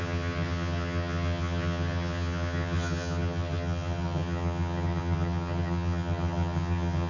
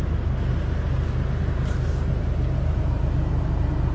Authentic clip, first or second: second